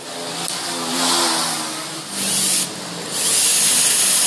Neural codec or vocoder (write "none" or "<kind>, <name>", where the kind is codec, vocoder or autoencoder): none